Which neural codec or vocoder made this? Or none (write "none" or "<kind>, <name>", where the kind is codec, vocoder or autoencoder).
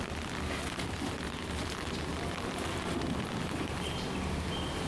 none